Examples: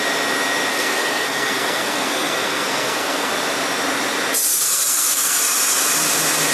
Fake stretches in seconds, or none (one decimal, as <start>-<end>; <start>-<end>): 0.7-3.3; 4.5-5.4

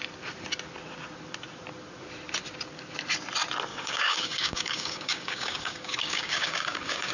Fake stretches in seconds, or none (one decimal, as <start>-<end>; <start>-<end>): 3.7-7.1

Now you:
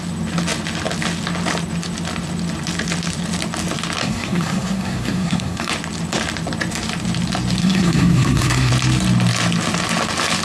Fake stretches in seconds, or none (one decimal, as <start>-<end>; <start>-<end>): 4.0-5.7; 7.6-8.7

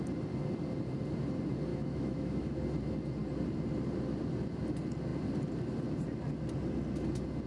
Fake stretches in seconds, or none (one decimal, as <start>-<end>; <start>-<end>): 1.7-2.6

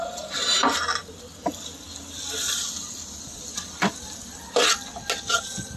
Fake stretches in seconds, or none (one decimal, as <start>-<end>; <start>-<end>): none

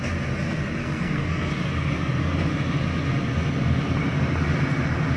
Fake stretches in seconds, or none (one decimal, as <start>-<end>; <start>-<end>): 0.8-1.5